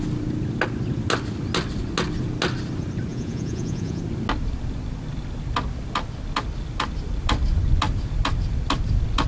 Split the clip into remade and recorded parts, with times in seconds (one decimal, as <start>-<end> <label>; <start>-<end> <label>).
0.0-3.1 recorded; 3.1-4.0 remade; 4.0-9.3 recorded